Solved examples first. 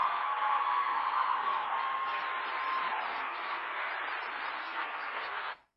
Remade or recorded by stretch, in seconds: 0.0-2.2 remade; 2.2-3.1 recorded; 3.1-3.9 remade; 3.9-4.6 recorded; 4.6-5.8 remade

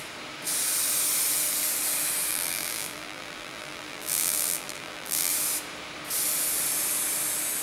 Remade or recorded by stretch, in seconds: 0.0-2.3 recorded; 2.3-5.3 remade; 5.3-7.6 recorded